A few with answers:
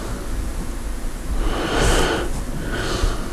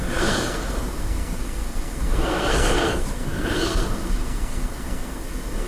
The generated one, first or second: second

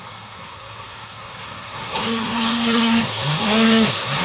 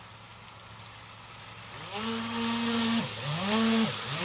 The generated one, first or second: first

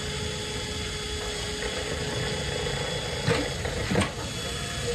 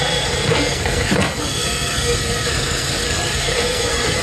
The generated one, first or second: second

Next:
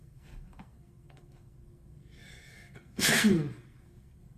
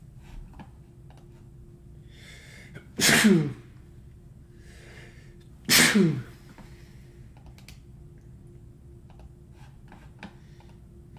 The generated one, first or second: first